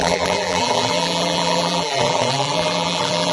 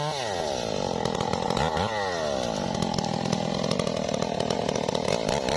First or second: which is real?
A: second